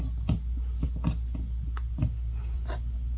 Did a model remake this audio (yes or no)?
no